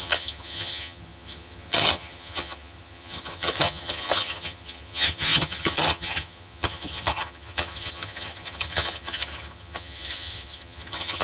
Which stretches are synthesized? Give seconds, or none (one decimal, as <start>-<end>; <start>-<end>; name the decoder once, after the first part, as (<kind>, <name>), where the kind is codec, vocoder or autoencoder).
0.0-11.2 (vocoder, HiFi-GAN)